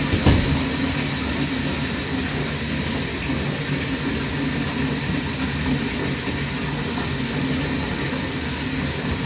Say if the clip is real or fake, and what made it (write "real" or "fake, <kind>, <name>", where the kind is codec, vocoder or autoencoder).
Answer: real